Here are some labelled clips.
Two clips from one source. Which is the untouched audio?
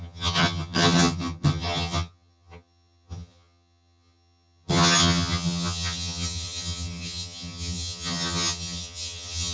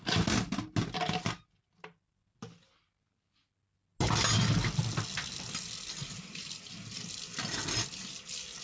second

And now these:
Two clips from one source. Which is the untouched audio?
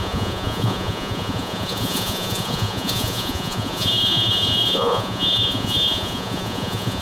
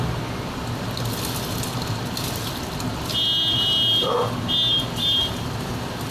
second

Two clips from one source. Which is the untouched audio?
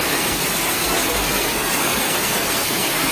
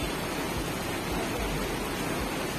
second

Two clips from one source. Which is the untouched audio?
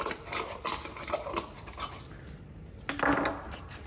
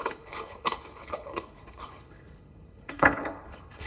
first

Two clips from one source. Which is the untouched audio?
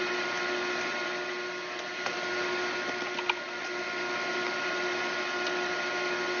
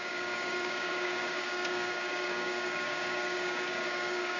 first